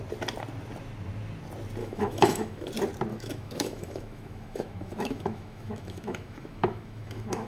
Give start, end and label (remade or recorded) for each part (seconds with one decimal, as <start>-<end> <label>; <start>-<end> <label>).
0.0-1.8 recorded; 1.8-2.7 remade; 2.7-3.1 recorded; 3.1-7.5 remade